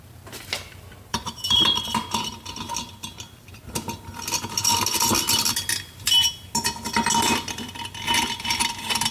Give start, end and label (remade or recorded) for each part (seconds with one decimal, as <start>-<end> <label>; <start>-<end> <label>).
0.0-1.1 recorded; 1.1-1.7 remade; 1.7-9.1 recorded